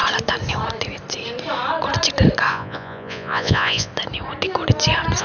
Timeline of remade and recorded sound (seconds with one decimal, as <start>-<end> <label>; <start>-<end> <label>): 0.0-2.5 recorded; 2.5-3.9 remade; 3.9-5.2 recorded